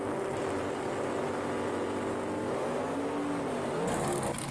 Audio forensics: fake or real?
real